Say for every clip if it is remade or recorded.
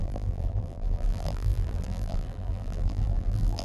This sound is remade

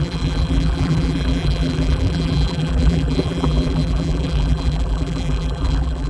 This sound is remade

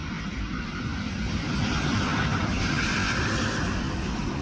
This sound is recorded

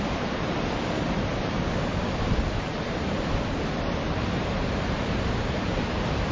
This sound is remade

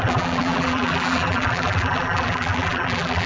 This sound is remade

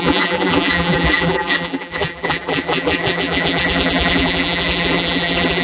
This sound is remade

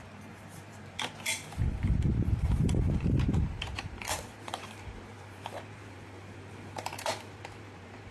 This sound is remade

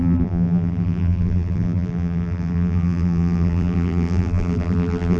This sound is remade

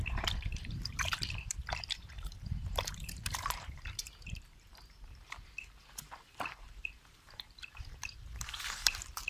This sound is remade